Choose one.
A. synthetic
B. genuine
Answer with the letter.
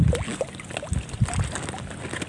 B